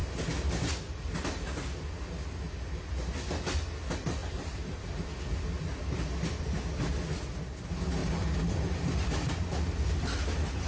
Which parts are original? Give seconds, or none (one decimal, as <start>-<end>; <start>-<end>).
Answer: 0.0-4.2; 7.2-8.0